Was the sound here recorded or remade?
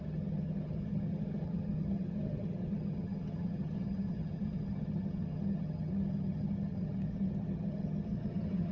remade